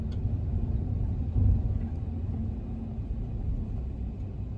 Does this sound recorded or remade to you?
recorded